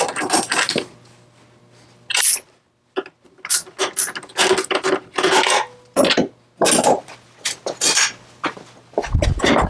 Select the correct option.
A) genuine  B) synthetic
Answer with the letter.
A